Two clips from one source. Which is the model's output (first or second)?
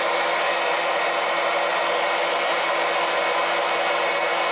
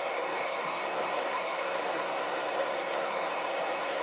second